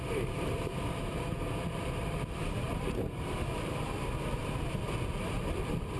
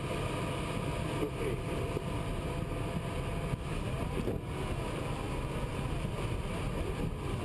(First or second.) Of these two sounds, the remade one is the first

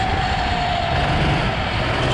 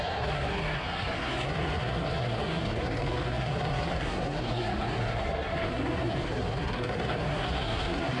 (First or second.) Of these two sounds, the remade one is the second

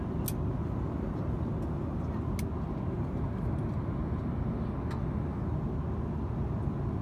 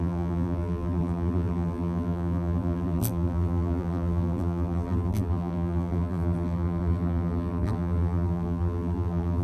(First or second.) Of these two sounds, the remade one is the second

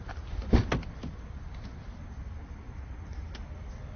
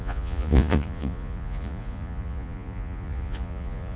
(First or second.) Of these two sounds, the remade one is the second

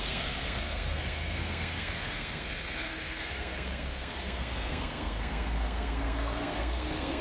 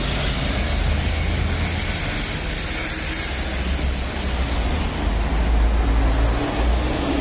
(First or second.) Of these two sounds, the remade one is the first